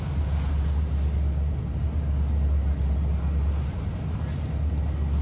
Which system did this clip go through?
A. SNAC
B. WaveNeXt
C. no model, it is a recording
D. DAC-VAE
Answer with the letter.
C